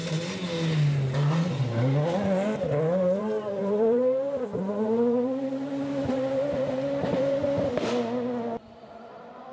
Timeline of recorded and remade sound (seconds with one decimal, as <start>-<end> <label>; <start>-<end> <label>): 0.0-3.2 recorded; 3.2-7.4 remade; 7.4-8.6 recorded; 8.6-9.5 remade